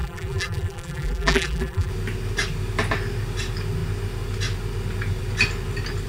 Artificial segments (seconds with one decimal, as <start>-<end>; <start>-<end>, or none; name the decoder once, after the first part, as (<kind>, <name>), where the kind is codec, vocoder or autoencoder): 0.0-1.9 (vocoder, BigVGAN v2)